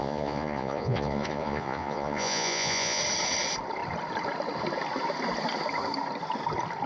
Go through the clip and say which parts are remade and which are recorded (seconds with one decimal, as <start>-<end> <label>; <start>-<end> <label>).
0.0-3.0 remade; 3.0-6.9 recorded